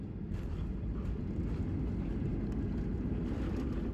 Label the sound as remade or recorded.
recorded